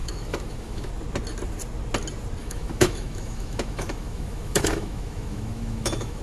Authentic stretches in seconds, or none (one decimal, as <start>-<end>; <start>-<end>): 0.9-2.4